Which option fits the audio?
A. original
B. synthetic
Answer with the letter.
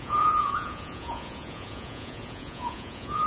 B